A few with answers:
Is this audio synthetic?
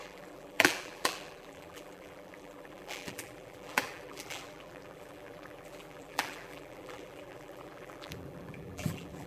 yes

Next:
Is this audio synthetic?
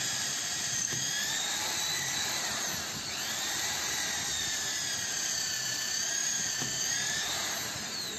yes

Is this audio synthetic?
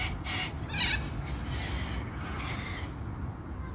no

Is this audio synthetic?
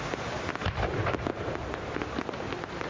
no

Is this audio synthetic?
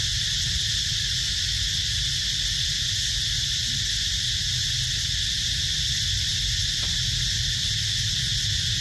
no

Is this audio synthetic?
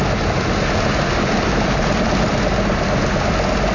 no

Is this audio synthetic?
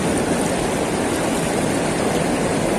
no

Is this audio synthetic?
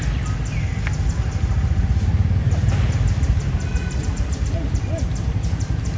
no